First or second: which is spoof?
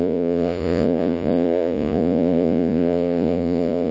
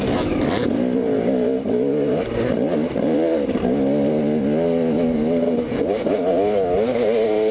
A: first